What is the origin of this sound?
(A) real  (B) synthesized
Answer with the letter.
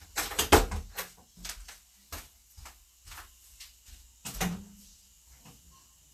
A